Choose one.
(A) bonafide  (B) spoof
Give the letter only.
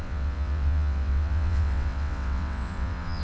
B